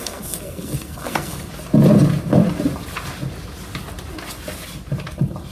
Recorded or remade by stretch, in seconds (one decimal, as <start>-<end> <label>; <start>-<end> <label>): 0.0-1.5 remade; 1.5-5.5 recorded